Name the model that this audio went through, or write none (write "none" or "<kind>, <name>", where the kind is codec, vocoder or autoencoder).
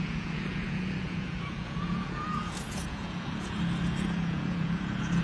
vocoder, Vocos